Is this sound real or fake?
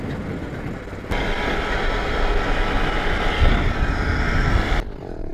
real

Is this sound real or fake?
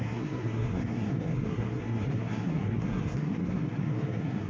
fake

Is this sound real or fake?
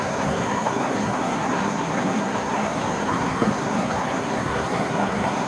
fake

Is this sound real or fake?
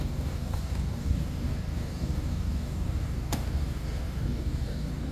fake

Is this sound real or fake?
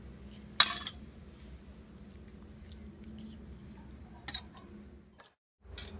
real